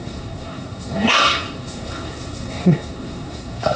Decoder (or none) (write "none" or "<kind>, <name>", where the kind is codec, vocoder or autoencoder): codec, SNAC